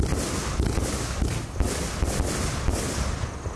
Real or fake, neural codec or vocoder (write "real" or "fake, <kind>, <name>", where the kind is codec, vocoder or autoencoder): real